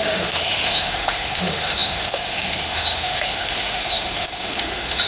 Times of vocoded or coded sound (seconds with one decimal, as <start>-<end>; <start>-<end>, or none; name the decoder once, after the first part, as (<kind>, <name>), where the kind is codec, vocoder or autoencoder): 0.0-5.1 (autoencoder, DAC-VAE)